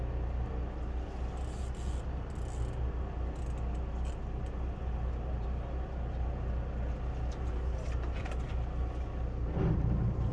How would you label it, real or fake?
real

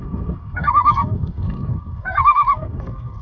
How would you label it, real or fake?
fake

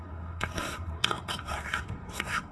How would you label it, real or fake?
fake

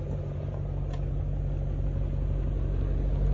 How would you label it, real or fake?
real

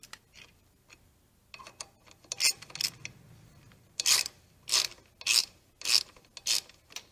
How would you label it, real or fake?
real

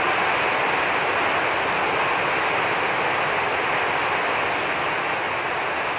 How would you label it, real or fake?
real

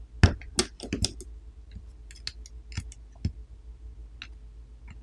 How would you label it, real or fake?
real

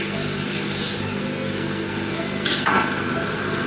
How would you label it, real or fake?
fake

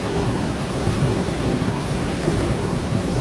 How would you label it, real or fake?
fake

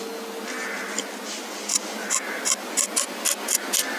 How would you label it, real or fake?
real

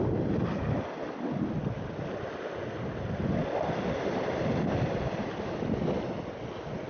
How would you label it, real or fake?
real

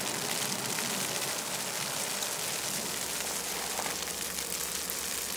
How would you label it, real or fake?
real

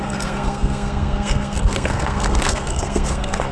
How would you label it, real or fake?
fake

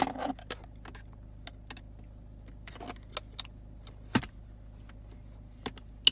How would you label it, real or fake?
real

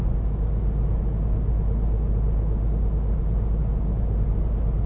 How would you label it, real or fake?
real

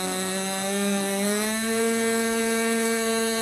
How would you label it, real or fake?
fake